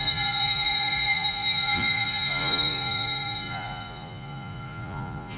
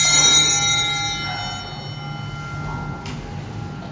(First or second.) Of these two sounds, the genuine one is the second